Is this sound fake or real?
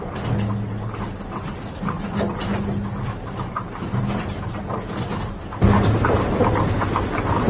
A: real